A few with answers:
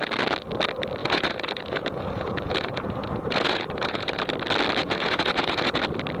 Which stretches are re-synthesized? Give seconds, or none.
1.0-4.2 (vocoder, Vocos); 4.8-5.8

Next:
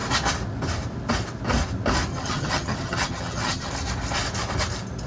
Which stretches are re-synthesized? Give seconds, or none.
2.1-3.7 (vocoder, HiFi-GAN)

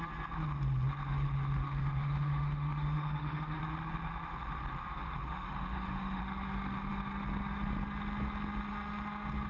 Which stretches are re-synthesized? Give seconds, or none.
1.6-3.6 (autoencoder, DAC-VAE); 5.0-6.2

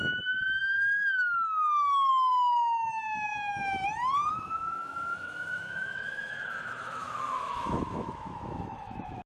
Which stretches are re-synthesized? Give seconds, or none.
0.0-3.3 (autoencoder, DAC-VAE); 4.3-9.3

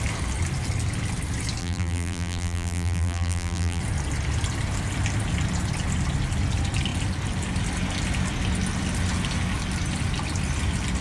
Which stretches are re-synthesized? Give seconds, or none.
1.6-3.8 (vocoder, BigVGAN v2)

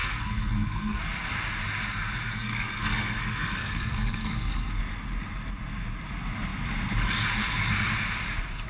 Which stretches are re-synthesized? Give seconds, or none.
0.0-1.0 (codec, SNAC); 2.3-4.8